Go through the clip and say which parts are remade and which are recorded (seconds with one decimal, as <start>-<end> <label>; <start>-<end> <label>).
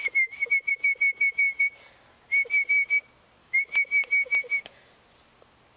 0.0-0.7 remade; 0.7-3.4 recorded; 3.4-4.8 remade; 4.8-5.8 recorded